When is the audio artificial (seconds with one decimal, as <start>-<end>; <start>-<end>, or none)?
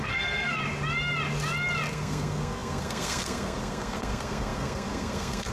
0.0-0.6; 1.9-5.5